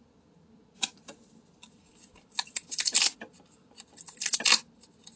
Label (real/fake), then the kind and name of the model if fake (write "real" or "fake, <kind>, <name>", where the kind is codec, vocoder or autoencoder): real